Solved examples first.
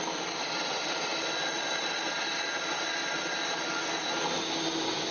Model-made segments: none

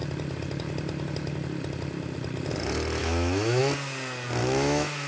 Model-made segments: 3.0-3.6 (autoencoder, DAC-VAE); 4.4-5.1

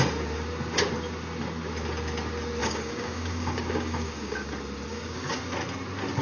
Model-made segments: 2.6-4.5 (codec, DAC); 4.9-5.4

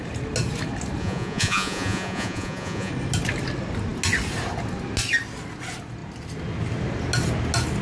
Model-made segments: 1.0-2.9 (vocoder, Vocos)

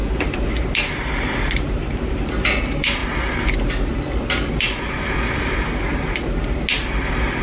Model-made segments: none

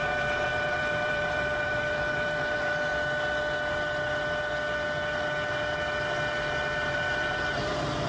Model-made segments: 0.0-2.9 (vocoder, BigVGAN v2); 6.9-8.1

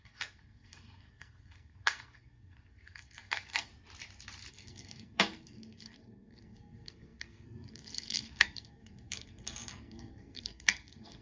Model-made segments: 0.0-3.7 (codec, SNAC); 4.5-11.2